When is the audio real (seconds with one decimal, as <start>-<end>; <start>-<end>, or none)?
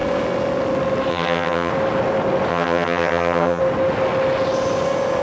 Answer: 0.0-1.1; 1.7-2.5; 3.6-5.2